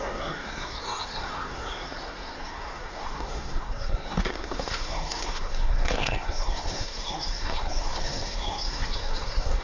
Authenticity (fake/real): fake